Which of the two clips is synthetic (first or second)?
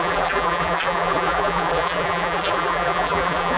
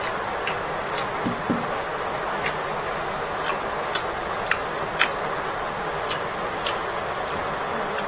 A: first